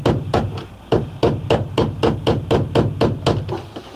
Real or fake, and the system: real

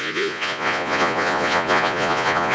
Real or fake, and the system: fake, vocoder, Vocos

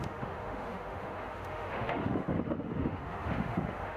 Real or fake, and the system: fake, autoencoder, DAC-VAE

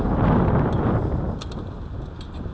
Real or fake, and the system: real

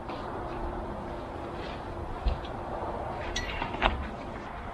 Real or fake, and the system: fake, vocoder, BigVGAN v2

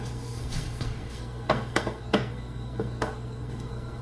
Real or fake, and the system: fake, codec, SNAC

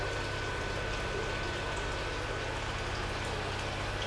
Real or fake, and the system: real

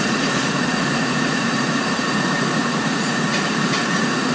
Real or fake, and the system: fake, vocoder, Vocos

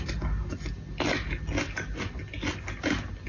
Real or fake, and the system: real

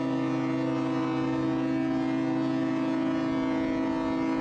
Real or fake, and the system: real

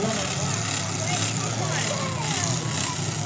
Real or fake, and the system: real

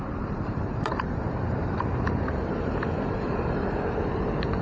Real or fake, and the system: fake, vocoder, BigVGAN v2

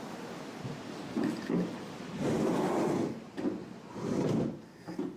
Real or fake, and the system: real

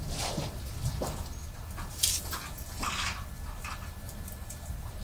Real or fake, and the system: real